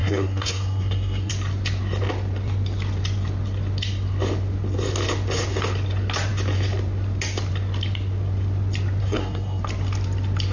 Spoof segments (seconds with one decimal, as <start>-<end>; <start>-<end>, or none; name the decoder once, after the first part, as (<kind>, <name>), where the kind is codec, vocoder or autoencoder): 0.0-1.3 (codec, SNAC); 9.0-9.6